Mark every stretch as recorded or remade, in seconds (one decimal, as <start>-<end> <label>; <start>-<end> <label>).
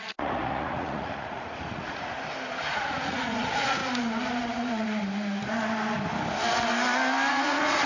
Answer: 0.0-2.1 remade; 2.1-2.7 recorded; 2.7-3.8 remade; 3.8-4.5 recorded; 4.5-5.0 remade; 5.0-7.3 recorded; 7.3-7.9 remade